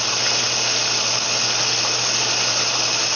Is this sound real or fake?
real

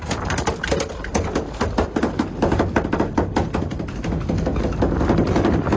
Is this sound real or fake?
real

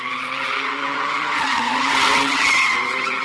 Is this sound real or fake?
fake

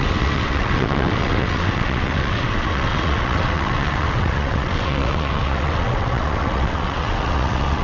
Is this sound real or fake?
fake